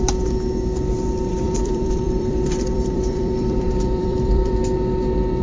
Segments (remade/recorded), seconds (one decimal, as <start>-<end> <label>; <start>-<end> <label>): 0.0-1.3 recorded; 1.3-4.5 remade; 4.5-5.4 recorded